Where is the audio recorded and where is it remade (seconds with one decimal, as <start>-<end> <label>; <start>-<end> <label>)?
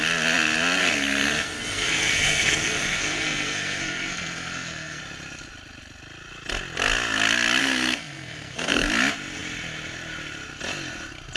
0.0-0.8 recorded; 0.8-5.0 remade; 5.0-7.6 recorded; 7.6-8.9 remade; 8.9-11.4 recorded